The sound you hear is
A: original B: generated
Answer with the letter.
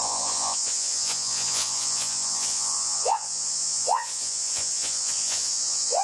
B